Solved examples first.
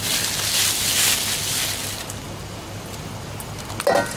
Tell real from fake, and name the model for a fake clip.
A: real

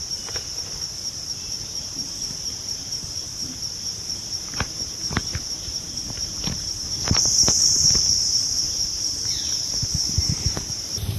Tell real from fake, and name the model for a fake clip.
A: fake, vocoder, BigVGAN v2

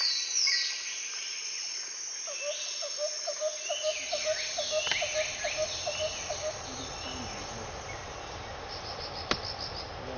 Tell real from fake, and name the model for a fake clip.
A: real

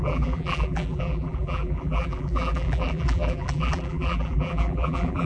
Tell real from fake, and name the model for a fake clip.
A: fake, vocoder, BigVGAN v2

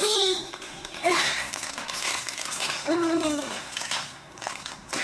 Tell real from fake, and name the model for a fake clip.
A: fake, codec, SNAC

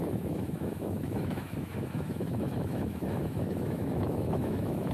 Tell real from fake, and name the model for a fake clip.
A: fake, autoencoder, DAC-VAE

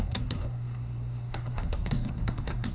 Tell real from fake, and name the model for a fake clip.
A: fake, codec, SNAC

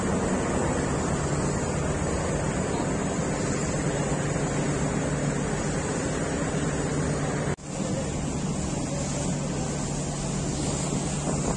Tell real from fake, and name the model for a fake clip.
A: real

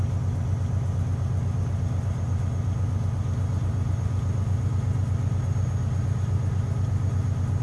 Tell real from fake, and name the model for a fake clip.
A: real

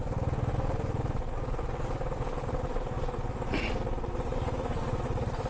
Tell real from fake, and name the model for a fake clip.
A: real